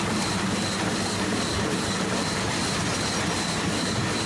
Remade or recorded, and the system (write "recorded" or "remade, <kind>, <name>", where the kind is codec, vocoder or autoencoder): recorded